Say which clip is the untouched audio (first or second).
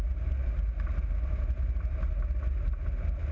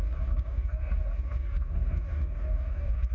first